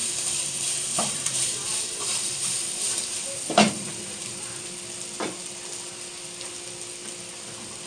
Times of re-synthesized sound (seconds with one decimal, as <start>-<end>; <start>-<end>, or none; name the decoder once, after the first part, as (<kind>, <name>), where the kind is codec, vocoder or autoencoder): 0.0-4.7 (vocoder, BigVGAN v2)